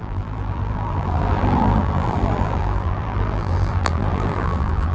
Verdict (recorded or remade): remade